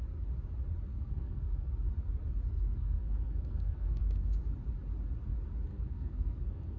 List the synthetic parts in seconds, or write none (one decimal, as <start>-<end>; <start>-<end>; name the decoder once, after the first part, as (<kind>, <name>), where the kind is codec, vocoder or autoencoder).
0.9-1.7 (codec, SNAC); 2.5-4.4; 5.7-6.8